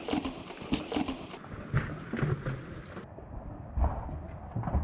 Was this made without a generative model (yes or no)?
yes